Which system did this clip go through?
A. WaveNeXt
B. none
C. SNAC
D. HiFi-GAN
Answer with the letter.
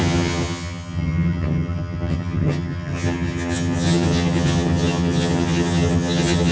D